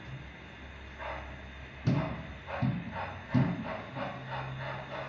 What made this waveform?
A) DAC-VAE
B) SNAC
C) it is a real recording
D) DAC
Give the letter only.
C